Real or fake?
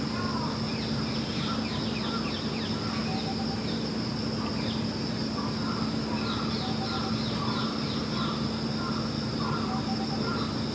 real